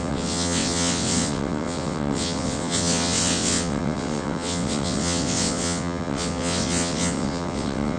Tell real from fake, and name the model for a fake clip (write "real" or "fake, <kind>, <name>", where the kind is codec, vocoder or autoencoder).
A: fake, vocoder, WaveNeXt